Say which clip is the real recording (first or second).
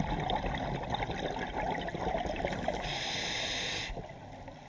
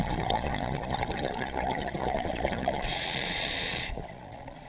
first